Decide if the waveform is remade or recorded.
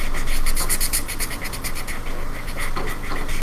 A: recorded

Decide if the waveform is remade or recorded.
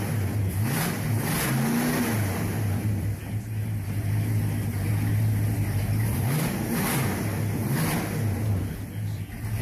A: recorded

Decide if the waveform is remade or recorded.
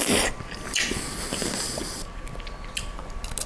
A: recorded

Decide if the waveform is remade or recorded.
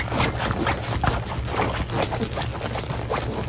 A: recorded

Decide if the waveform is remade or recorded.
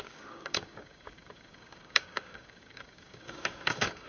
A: remade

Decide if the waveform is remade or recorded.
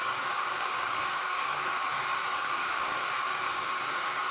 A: remade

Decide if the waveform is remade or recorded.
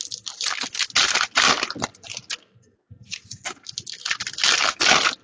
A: recorded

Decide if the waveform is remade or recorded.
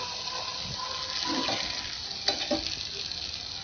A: recorded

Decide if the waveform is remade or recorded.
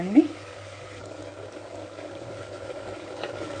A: remade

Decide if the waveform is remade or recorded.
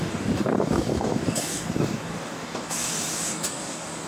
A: remade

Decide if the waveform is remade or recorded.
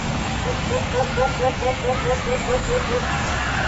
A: remade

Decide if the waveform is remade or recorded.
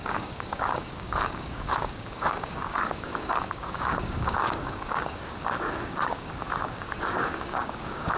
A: remade